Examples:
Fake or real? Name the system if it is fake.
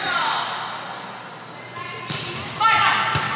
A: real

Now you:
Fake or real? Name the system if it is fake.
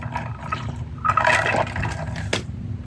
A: real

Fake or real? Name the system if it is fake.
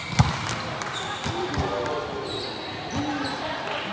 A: real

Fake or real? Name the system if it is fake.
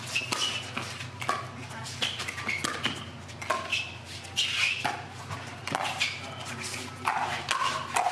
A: real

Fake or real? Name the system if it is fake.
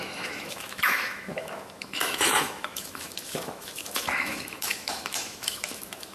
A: fake, autoencoder, DAC-VAE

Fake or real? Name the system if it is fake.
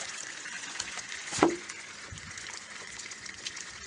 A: fake, vocoder, Vocos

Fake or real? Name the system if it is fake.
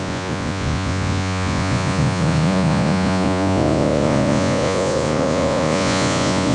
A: fake, vocoder, Vocos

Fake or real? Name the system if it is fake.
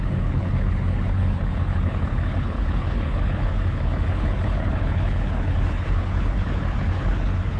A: fake, codec, HILCodec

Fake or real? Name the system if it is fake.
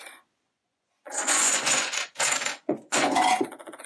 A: fake, vocoder, Vocos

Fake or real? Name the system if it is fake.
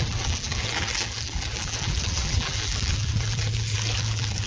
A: fake, vocoder, BigVGAN v2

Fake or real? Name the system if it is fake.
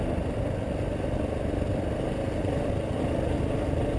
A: real